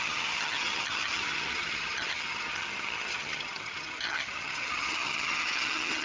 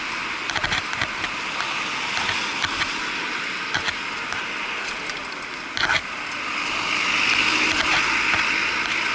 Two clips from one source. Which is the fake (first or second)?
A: first